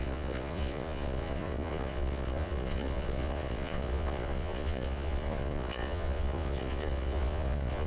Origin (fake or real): fake